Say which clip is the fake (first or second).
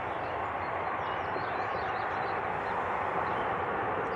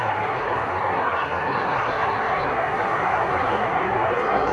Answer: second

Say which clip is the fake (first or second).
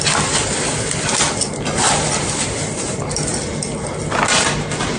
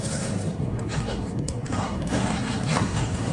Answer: second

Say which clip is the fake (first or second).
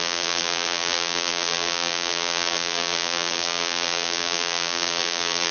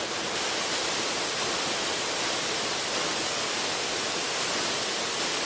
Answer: first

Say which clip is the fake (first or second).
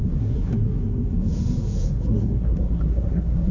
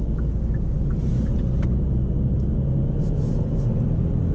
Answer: first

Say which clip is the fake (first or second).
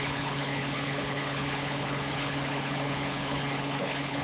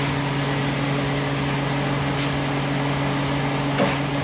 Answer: first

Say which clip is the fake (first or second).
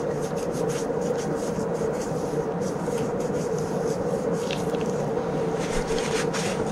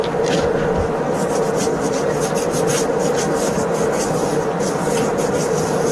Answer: first